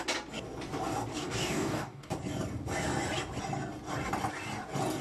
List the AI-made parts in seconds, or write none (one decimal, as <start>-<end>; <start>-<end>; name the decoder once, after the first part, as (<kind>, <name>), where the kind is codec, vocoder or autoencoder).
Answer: 1.1-2.1 (codec, DAC)